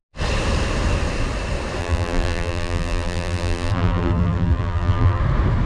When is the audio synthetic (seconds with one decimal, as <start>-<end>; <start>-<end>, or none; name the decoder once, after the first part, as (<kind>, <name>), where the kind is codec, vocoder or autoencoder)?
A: 1.8-5.2 (vocoder, BigVGAN v2)